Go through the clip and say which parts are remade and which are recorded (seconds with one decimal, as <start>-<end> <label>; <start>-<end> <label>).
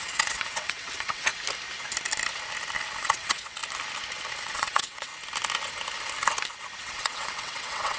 0.0-1.3 remade; 1.3-3.0 recorded; 3.0-3.6 remade; 3.6-4.4 recorded; 4.4-5.1 remade; 5.1-6.8 recorded; 6.8-8.0 remade